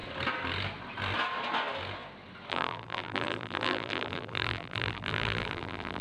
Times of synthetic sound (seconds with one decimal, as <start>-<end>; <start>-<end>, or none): 2.5-6.0